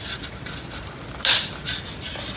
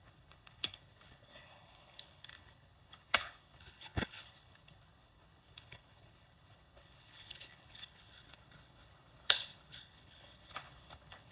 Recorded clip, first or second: first